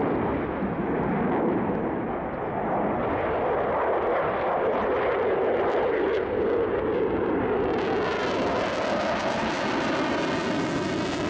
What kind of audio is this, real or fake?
real